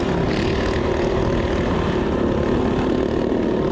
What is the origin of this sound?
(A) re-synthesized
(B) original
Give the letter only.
B